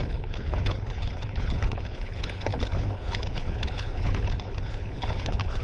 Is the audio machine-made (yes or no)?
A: yes